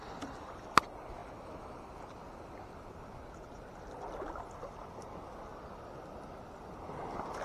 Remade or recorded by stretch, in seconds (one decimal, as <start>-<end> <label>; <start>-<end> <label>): 0.0-7.4 recorded